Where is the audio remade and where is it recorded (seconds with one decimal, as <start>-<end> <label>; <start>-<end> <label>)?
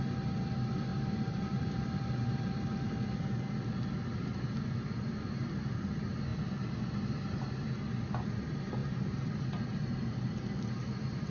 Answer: 0.0-0.9 recorded; 0.9-3.2 remade; 3.2-8.8 recorded; 8.8-9.8 remade; 9.8-11.3 recorded